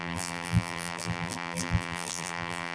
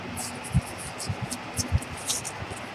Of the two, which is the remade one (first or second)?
first